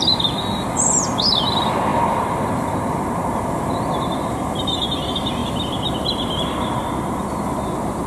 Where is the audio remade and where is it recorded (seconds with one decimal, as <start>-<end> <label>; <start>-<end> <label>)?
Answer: 0.0-8.1 recorded